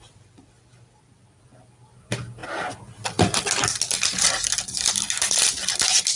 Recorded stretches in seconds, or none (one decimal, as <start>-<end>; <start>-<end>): none

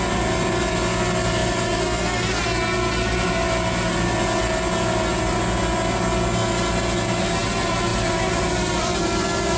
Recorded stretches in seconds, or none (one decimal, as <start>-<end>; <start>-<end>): 0.0-7.9; 9.0-9.6

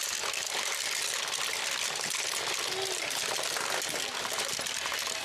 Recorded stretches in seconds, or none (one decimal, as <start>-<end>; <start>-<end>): 0.0-5.2

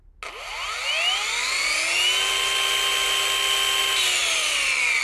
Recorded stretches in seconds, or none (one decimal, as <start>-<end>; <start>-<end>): 0.0-4.2